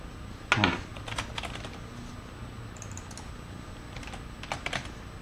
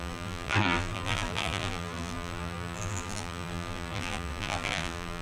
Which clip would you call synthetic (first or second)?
second